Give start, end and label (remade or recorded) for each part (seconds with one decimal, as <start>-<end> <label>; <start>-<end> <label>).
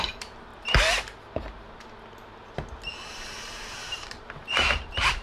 0.0-0.5 remade; 0.5-3.1 recorded; 3.1-5.2 remade